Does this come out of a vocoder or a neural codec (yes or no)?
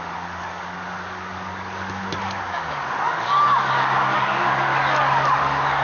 yes